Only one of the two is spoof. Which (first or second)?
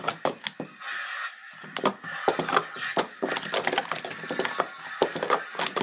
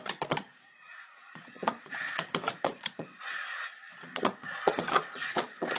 second